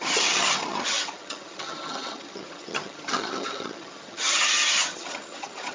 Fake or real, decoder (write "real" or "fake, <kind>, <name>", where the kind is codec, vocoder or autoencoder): fake, vocoder, HiFi-GAN